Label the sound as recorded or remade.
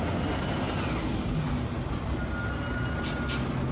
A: recorded